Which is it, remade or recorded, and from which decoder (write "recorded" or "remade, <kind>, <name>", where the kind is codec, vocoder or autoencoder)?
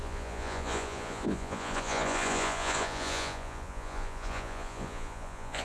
remade, vocoder, Vocos